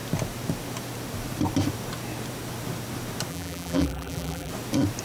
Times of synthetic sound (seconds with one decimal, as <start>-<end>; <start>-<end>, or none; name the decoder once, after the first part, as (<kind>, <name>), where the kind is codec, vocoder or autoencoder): 3.3-4.5 (vocoder, BigVGAN v2)